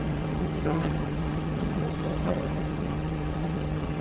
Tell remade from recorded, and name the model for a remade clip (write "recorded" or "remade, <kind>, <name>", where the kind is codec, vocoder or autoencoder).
remade, vocoder, HiFi-GAN